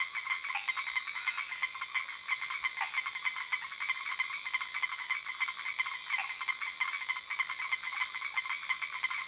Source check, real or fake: fake